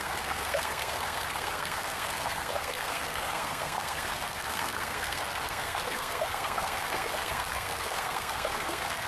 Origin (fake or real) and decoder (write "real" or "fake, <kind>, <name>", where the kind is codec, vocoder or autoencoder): fake, codec, SNAC